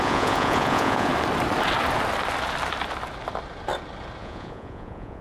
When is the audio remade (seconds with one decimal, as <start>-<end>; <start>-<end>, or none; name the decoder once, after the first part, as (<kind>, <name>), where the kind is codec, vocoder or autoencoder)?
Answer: 0.0-1.1 (vocoder, Vocos); 4.2-5.2